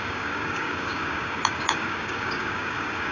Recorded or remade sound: remade